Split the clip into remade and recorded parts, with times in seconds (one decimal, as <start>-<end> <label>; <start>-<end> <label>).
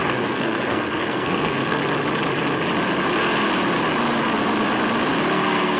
0.0-1.8 remade; 1.8-5.3 recorded; 5.3-5.8 remade